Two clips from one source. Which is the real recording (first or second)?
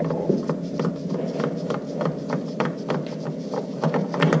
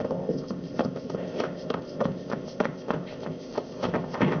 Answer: first